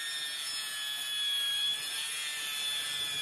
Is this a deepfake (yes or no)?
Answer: no